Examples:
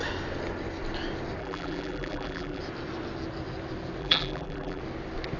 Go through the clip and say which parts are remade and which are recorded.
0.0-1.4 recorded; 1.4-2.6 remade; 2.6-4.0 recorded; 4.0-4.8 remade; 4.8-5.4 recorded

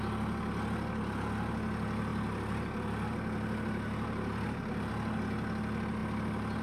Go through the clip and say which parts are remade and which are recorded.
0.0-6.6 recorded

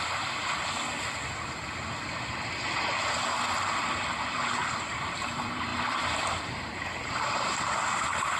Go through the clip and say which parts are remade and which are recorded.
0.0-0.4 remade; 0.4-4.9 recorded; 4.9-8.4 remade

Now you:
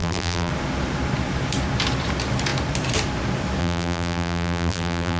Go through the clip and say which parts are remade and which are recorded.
0.0-0.5 remade; 0.5-3.6 recorded; 3.6-5.2 remade